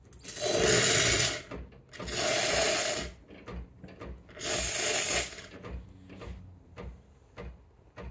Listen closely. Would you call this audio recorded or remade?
recorded